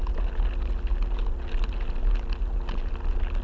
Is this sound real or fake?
real